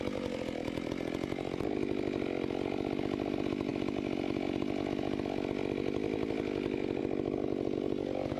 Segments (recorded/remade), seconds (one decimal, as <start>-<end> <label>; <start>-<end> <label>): 0.0-8.4 recorded